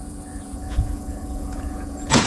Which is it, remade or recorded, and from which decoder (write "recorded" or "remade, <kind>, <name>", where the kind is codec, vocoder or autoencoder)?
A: remade, vocoder, Vocos